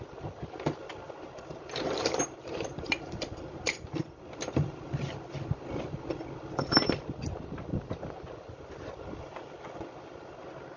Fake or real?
fake